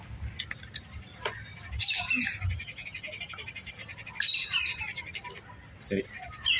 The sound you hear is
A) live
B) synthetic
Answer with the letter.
A